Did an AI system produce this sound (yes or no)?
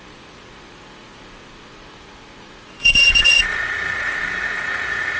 yes